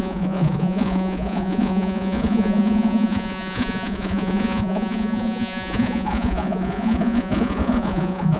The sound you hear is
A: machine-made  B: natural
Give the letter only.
A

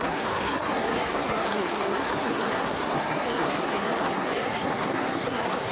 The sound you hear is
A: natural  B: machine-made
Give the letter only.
B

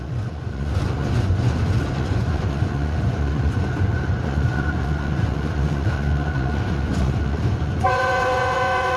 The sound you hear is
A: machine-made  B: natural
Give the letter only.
A